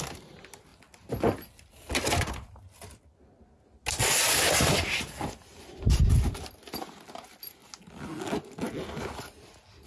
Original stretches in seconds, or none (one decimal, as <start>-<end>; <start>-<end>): 0.0-9.9